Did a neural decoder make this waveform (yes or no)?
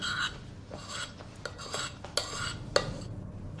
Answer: no